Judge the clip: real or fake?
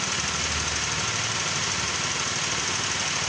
real